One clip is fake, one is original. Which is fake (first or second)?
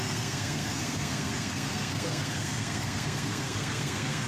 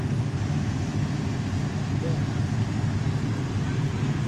first